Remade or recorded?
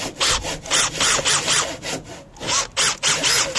recorded